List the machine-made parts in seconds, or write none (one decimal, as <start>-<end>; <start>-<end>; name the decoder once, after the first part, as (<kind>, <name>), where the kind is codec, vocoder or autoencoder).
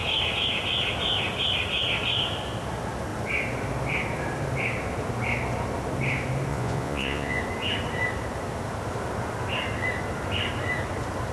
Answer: 6.5-7.4 (vocoder, Vocos)